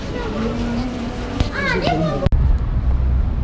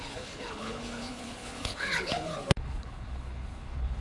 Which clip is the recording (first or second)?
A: first